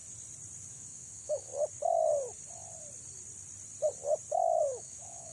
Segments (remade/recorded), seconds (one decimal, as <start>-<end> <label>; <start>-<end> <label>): 0.0-0.7 recorded; 0.7-1.5 remade; 1.5-4.6 recorded; 4.6-5.3 remade